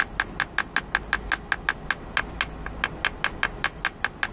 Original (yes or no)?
yes